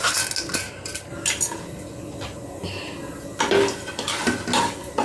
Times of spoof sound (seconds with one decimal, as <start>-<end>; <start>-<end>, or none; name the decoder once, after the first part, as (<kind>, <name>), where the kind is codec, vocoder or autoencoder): none